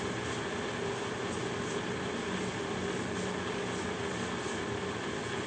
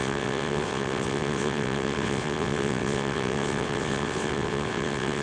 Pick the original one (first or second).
first